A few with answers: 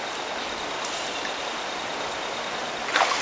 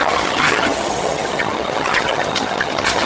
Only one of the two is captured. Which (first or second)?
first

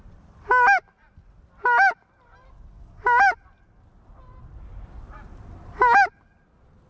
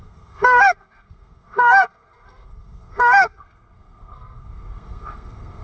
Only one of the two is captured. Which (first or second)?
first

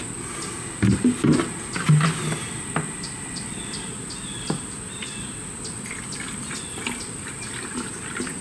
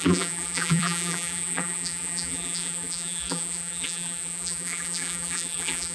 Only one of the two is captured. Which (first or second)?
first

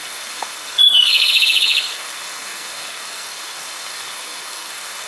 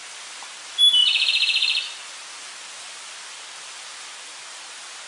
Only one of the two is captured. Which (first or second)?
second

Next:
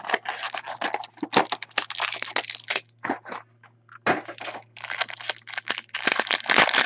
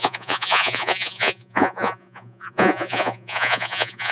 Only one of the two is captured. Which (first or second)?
first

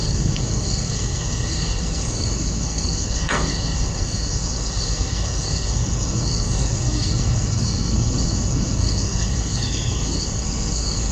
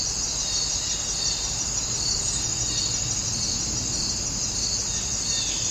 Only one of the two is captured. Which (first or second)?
second